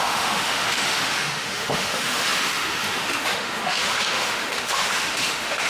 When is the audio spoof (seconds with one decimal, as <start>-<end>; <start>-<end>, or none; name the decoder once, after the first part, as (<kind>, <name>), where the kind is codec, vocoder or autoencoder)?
0.0-5.7 (autoencoder, DAC-VAE)